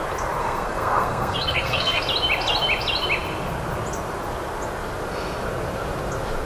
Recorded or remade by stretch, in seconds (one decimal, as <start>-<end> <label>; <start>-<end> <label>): 0.0-0.4 recorded; 0.4-2.0 remade; 2.0-6.5 recorded